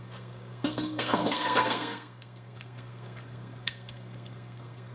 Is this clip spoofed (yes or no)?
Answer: yes